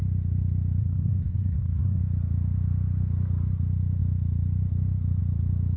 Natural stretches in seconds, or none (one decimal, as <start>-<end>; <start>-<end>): 0.0-0.8; 2.0-5.8